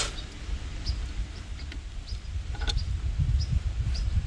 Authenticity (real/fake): real